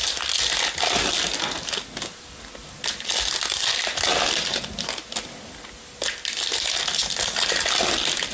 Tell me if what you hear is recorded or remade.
recorded